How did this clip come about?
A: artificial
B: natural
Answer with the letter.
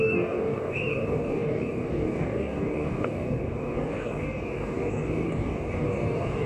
A